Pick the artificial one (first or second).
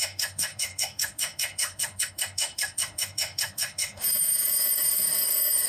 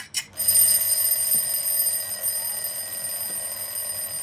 first